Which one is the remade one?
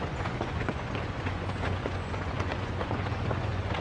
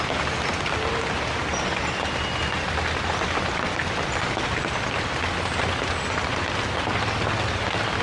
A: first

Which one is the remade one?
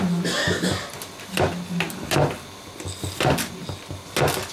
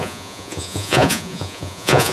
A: second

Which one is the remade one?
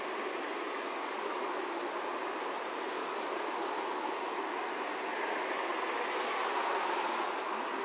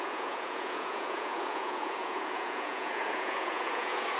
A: second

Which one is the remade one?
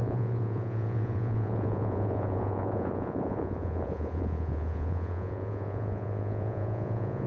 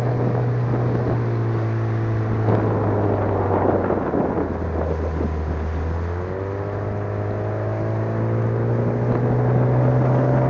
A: first